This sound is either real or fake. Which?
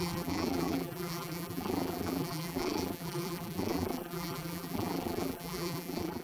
fake